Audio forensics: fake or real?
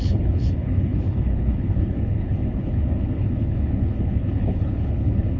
fake